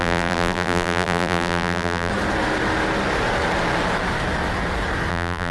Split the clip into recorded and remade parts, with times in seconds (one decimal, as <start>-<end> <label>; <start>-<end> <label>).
0.0-2.1 remade; 2.1-5.1 recorded; 5.1-5.5 remade